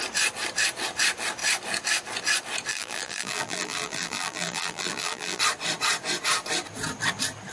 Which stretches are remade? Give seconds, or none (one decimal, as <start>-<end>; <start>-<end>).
2.7-5.4